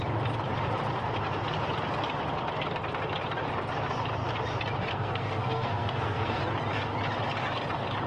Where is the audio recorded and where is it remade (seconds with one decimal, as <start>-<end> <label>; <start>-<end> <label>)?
0.0-4.9 recorded; 4.9-6.4 remade; 6.4-8.1 recorded